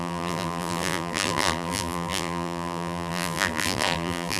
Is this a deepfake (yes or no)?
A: yes